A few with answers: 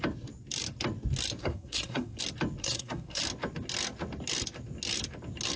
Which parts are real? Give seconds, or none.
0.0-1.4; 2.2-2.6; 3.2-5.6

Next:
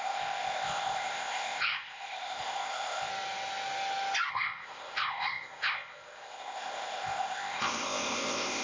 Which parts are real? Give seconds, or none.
3.1-4.3

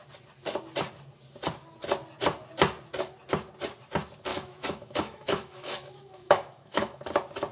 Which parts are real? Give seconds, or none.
0.0-4.3; 7.0-7.5